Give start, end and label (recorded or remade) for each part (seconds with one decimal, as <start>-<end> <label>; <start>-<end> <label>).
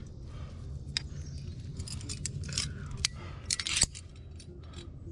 0.0-5.1 recorded